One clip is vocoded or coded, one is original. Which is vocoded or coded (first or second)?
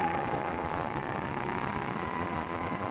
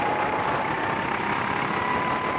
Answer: first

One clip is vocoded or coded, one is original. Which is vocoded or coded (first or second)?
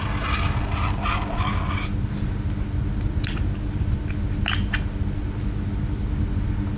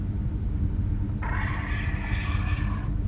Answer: second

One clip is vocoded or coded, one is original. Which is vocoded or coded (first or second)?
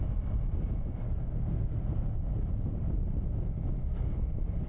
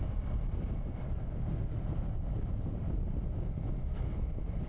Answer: second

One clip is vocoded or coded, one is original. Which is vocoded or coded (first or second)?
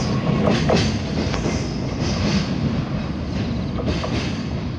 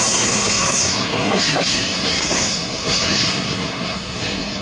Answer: second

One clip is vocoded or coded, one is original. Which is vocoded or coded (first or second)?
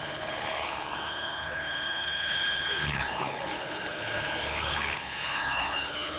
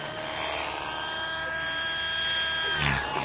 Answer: first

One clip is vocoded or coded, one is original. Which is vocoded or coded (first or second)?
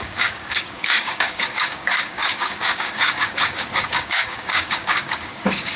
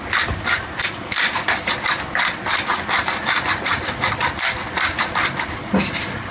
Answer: first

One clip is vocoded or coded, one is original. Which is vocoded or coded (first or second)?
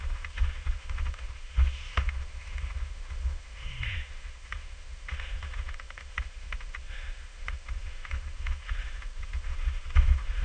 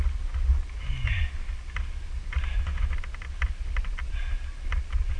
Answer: first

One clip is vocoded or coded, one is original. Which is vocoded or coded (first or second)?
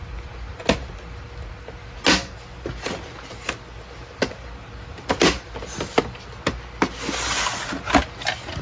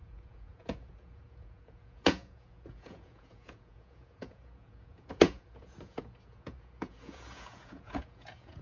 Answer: second